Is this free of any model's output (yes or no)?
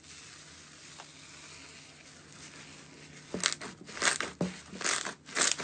yes